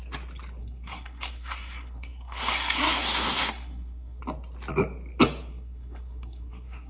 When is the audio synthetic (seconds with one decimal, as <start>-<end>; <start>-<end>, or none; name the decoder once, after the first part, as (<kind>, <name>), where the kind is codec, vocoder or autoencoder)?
0.6-4.2 (codec, SNAC); 5.5-6.9